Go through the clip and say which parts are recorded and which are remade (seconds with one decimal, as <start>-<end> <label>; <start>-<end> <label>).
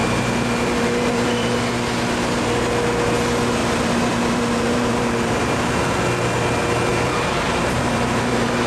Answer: 0.0-1.6 remade; 1.6-3.6 recorded; 3.6-6.0 remade; 6.0-6.9 recorded; 6.9-8.7 remade